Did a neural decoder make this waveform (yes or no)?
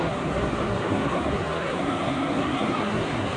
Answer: yes